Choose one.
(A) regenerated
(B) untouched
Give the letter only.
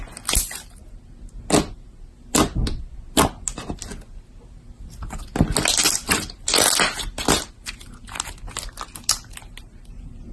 B